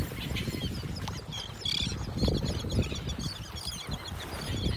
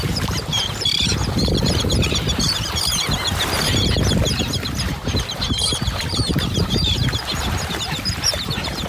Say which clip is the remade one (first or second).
second